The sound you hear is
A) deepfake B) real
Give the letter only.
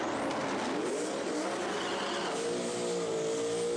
B